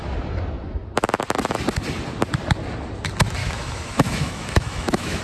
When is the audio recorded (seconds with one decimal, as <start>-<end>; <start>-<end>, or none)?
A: 0.0-3.4